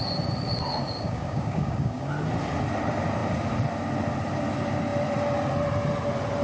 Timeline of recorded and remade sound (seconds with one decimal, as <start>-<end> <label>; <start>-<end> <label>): 0.0-0.8 recorded; 0.8-2.1 remade; 2.1-6.4 recorded